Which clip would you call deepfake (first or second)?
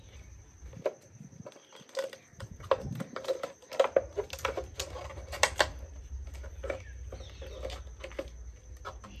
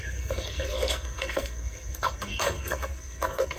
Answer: second